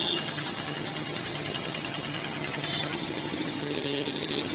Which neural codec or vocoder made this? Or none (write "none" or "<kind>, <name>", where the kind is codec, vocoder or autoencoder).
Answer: vocoder, HiFi-GAN